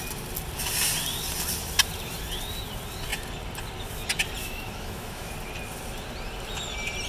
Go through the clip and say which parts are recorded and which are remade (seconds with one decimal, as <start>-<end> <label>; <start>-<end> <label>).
0.0-4.4 recorded; 4.4-5.3 remade; 5.3-7.1 recorded